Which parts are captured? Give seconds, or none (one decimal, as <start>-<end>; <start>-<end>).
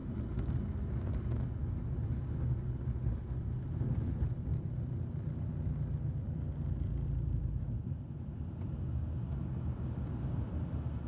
0.0-4.5; 8.7-11.1